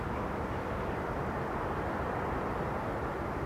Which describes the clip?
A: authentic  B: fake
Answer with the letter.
B